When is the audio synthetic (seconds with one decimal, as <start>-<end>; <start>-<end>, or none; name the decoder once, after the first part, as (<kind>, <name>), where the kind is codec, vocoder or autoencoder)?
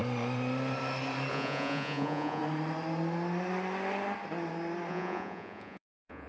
1.3-2.4 (vocoder, Vocos); 4.9-6.3